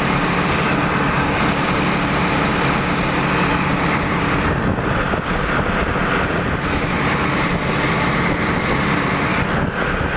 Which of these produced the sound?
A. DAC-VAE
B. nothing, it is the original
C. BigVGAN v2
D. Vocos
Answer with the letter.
B